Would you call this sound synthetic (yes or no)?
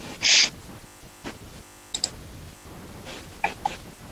no